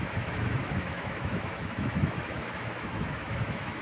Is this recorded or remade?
remade